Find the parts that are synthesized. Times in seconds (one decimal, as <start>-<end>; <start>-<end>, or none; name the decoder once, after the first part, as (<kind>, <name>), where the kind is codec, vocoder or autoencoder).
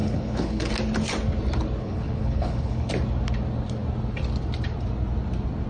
0.0-0.7 (codec, HILCodec); 1.8-2.9